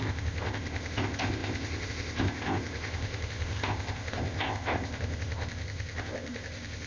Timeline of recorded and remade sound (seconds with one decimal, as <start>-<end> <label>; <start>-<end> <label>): 0.0-6.9 remade